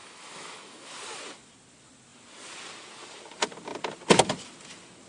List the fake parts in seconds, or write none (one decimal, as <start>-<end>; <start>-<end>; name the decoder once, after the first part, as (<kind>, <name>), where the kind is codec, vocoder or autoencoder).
0.0-0.9 (autoencoder, DAC-VAE)